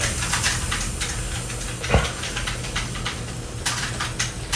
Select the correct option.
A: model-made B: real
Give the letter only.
B